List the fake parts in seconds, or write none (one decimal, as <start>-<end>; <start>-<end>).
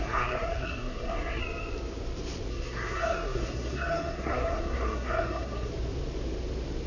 0.0-1.4; 2.5-5.7